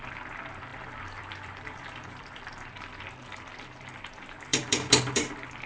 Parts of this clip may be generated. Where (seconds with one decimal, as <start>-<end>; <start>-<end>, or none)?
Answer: 0.7-3.0; 4.5-5.3

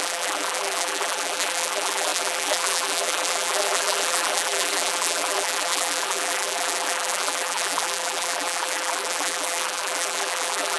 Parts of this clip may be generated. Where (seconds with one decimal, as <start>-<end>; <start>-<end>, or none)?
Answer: 0.0-10.8

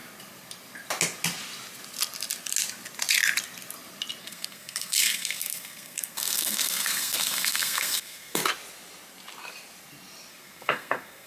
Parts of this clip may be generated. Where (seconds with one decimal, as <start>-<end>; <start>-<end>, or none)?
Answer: 4.2-8.4; 10.3-11.3

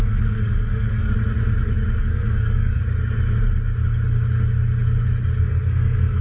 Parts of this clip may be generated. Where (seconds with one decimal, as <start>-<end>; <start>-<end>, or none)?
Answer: 0.0-1.1; 2.0-2.8; 5.4-6.2

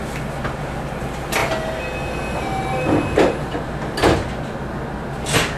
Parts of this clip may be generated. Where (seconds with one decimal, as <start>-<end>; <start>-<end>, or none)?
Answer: none

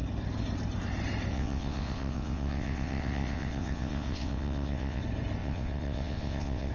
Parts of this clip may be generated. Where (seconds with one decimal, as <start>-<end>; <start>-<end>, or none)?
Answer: 1.3-5.0; 5.4-6.7